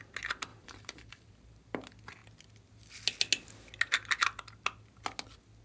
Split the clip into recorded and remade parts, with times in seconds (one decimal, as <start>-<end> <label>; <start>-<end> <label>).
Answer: 0.0-0.5 recorded; 0.5-1.5 remade; 1.5-5.6 recorded